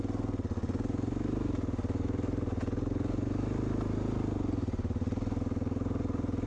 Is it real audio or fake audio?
real